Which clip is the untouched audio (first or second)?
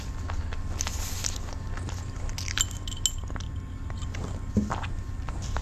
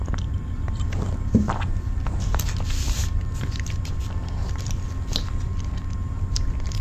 first